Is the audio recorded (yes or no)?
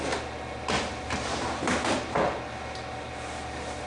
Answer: yes